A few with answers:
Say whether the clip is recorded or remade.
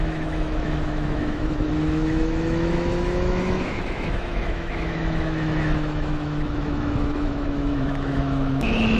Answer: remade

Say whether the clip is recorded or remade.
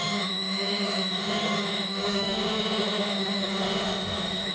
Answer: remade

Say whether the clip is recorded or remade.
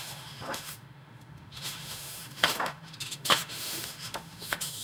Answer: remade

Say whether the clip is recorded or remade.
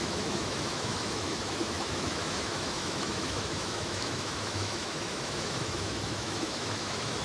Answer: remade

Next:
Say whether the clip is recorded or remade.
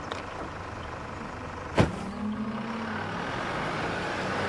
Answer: recorded